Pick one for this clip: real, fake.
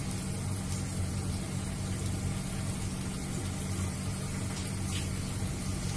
real